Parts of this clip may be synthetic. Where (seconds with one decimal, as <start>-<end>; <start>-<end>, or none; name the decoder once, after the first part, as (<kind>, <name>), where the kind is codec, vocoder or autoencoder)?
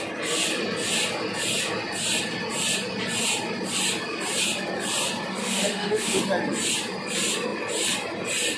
5.4-6.2 (autoencoder, DAC-VAE)